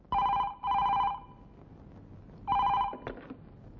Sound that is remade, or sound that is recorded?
recorded